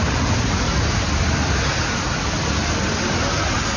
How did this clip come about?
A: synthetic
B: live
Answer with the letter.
B